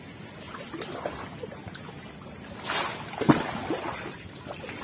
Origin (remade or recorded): recorded